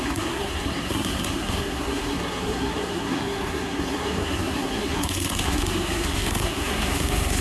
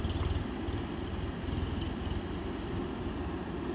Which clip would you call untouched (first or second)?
second